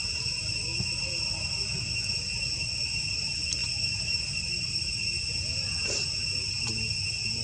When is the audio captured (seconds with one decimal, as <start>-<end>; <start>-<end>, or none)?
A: 0.0-3.6; 4.5-5.5; 6.6-7.4